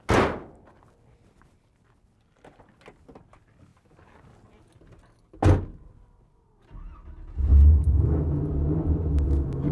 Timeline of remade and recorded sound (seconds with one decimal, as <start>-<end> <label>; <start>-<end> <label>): 0.0-7.5 recorded; 7.5-8.4 remade; 8.4-9.7 recorded